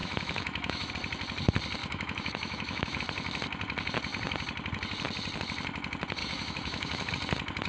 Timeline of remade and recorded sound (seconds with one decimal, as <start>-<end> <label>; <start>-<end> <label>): 0.0-0.9 remade; 0.9-1.8 recorded; 1.8-3.0 remade; 3.0-6.2 recorded; 6.2-7.1 remade; 7.1-7.7 recorded